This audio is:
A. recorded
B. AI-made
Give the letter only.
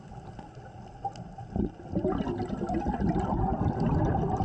A